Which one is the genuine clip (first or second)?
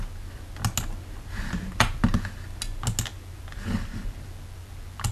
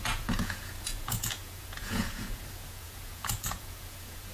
first